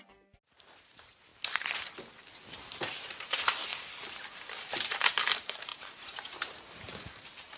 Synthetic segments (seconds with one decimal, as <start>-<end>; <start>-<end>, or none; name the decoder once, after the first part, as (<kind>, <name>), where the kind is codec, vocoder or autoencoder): 0.0-1.3 (vocoder, BigVGAN v2); 2.5-3.7; 4.5-7.6